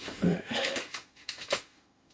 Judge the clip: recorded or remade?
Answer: remade